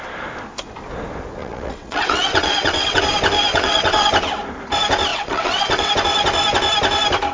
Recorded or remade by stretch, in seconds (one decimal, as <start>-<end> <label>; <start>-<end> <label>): 0.0-1.4 recorded; 1.4-3.0 remade; 3.0-3.5 recorded; 3.5-4.1 remade; 4.1-5.1 recorded; 5.1-5.9 remade; 5.9-7.3 recorded